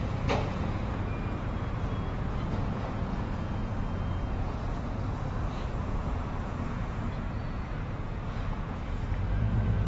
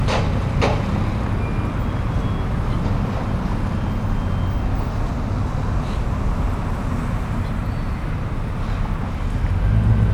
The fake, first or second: first